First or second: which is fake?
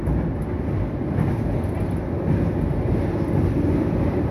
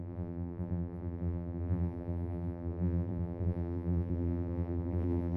second